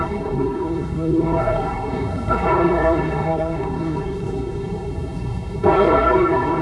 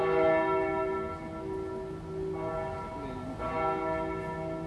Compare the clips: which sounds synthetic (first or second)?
first